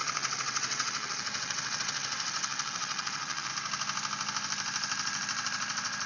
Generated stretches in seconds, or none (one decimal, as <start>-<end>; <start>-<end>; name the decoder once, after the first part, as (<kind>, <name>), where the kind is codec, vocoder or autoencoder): 0.0-3.5 (vocoder, WaveNeXt)